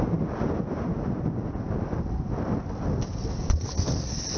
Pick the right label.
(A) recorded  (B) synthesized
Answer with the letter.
A